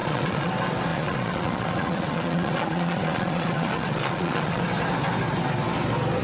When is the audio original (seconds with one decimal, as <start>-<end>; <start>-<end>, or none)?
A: 0.5-0.9; 4.6-6.2